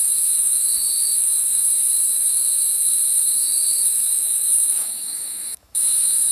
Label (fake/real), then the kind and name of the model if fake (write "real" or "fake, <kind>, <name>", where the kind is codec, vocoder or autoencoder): fake, autoencoder, DAC-VAE